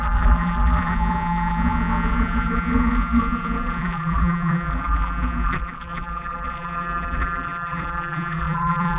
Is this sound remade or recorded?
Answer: remade